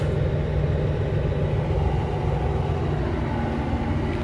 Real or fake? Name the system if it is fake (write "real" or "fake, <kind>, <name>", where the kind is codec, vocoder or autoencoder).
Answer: real